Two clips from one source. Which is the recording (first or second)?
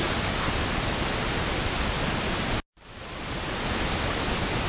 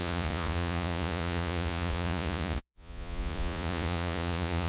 first